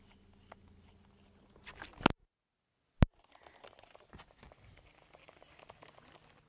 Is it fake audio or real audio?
real